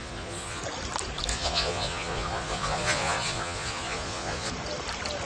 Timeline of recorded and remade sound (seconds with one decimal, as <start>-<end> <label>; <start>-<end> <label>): 0.0-0.6 remade; 0.6-1.3 recorded; 1.3-4.5 remade; 4.5-5.3 recorded